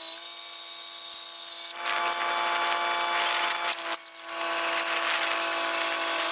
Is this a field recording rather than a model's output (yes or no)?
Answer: yes